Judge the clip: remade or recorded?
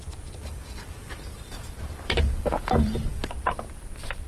remade